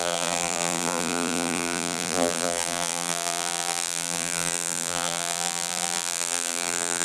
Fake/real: fake